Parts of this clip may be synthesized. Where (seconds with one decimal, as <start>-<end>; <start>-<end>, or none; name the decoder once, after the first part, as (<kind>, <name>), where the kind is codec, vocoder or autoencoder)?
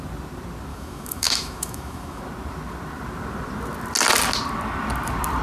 0.7-2.2 (autoencoder, DAC-VAE)